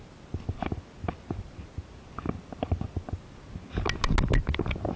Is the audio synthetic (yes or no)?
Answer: no